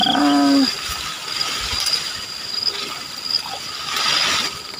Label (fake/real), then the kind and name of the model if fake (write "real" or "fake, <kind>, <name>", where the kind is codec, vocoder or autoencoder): real